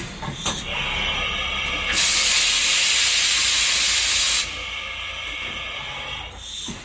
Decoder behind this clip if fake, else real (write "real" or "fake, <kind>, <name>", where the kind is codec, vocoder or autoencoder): real